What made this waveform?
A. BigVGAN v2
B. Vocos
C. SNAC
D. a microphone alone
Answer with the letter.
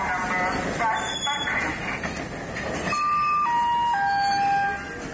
D